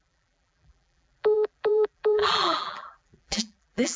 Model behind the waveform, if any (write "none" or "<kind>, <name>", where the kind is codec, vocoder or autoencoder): vocoder, BigVGAN v2